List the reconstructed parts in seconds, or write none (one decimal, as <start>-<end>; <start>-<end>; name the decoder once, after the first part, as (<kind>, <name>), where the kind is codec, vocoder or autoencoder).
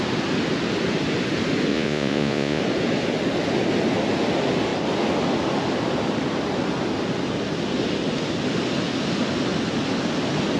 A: 1.7-2.6 (vocoder, Vocos)